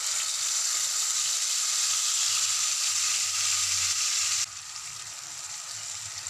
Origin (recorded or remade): recorded